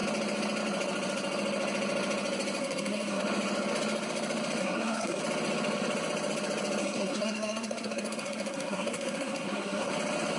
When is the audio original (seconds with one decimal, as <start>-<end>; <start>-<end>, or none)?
0.0-2.6; 3.2-4.6; 5.2-6.8; 9.9-10.4